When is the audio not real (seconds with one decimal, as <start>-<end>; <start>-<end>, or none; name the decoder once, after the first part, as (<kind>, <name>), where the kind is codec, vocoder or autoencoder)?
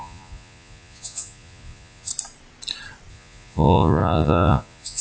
0.0-2.1 (vocoder, Vocos); 3.1-5.0